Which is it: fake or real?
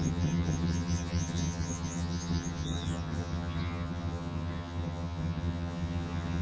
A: fake